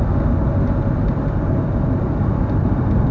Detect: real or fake real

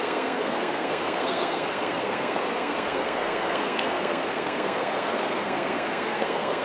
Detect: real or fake fake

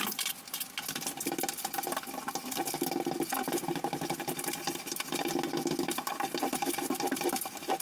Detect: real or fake real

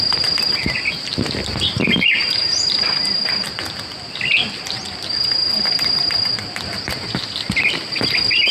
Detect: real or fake real